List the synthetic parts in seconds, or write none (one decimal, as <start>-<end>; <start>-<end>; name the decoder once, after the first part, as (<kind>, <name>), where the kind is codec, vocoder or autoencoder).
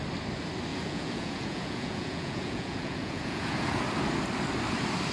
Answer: 0.7-3.8 (vocoder, Vocos)